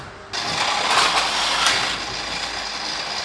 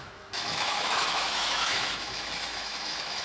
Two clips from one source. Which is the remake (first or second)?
second